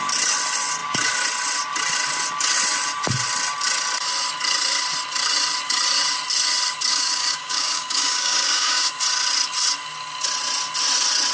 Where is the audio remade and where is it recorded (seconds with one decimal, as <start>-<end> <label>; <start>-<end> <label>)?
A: 0.0-6.9 recorded; 6.9-8.9 remade; 8.9-11.3 recorded